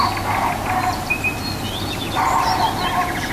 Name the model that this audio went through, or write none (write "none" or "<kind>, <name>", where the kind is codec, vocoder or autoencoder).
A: none